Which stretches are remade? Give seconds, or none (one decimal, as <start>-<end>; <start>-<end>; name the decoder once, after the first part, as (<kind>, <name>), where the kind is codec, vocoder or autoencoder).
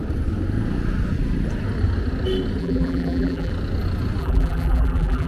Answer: 2.6-3.5 (vocoder, BigVGAN v2); 4.2-5.3